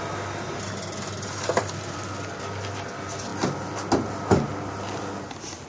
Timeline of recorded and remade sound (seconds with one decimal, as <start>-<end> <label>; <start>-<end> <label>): 0.0-5.7 recorded